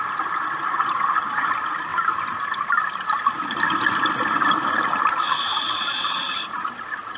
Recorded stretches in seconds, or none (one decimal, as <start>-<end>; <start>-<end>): 0.0-5.5; 6.1-7.2